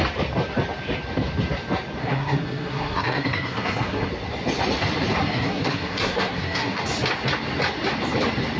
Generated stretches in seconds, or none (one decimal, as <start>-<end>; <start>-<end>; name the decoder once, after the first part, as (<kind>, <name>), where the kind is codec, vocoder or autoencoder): 2.0-4.1 (codec, SNAC); 5.2-6.8